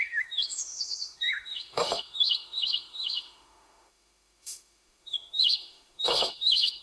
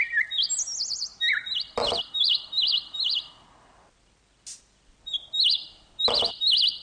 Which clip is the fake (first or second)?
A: first